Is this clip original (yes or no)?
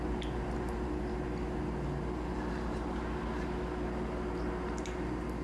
yes